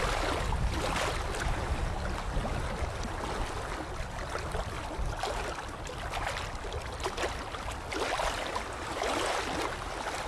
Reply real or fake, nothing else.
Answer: real